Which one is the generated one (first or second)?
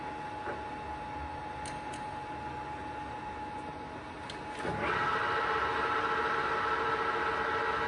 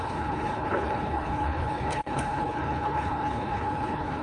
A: second